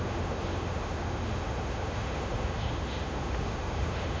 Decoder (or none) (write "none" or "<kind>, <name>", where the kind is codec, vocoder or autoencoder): autoencoder, DAC-VAE